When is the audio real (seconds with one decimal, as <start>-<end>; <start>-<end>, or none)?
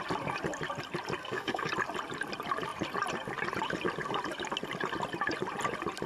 0.0-1.2; 1.7-6.1